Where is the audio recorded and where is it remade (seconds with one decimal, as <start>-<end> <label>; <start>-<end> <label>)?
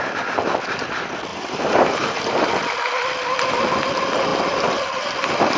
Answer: 0.0-1.3 recorded; 1.3-2.5 remade; 2.5-5.6 recorded